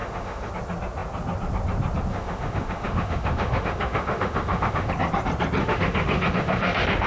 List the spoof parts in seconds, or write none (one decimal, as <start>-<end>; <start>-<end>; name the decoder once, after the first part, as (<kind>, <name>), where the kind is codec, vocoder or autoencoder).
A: 0.0-0.5 (autoencoder, DAC-VAE); 2.1-4.9; 5.6-7.1